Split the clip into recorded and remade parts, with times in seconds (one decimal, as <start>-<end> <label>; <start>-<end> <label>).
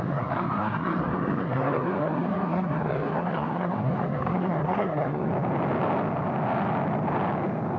0.0-5.3 remade; 5.3-7.8 recorded